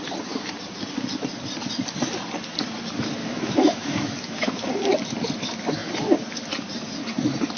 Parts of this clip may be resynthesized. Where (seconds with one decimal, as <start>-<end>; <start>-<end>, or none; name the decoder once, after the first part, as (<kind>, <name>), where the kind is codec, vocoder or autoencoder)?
3.2-4.6 (autoencoder, DAC-VAE)